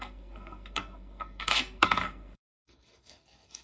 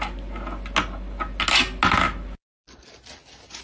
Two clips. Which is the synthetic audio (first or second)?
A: first